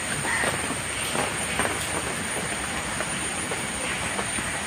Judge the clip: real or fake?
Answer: real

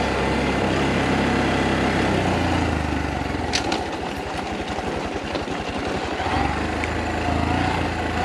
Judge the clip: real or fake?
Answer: real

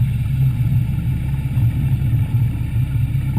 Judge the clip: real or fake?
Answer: real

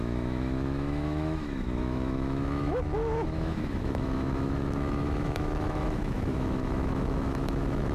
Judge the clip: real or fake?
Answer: fake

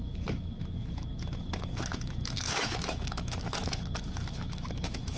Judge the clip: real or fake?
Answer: fake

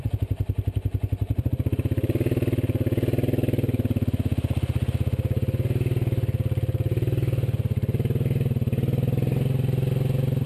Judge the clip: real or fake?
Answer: real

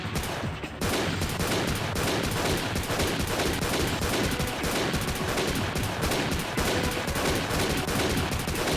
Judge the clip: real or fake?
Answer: real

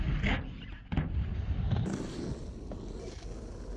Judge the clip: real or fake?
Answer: real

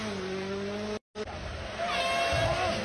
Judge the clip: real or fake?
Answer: real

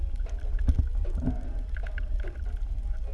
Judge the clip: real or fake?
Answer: real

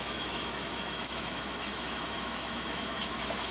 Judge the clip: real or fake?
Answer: fake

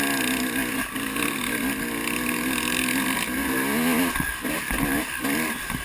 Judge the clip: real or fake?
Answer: real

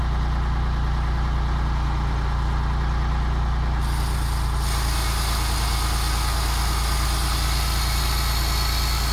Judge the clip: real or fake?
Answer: real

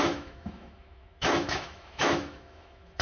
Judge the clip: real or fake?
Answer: fake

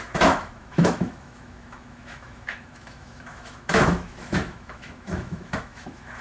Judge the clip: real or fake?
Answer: fake